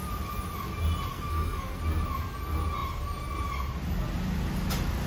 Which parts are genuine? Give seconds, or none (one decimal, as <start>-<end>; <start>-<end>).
0.0-1.1; 1.8-5.1

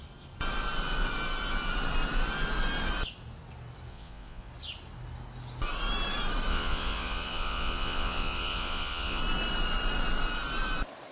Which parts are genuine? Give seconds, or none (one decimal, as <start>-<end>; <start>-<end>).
0.0-3.9; 4.5-6.5; 9.2-11.1

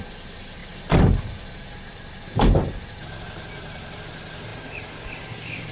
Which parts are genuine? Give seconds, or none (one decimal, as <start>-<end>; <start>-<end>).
0.0-0.6; 4.0-4.5; 5.1-5.7

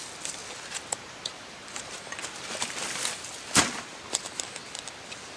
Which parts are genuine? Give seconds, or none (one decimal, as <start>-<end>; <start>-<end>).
0.0-0.4; 3.6-4.6

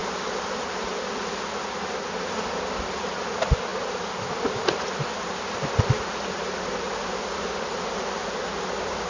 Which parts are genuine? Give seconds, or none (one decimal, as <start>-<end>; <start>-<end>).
0.0-9.1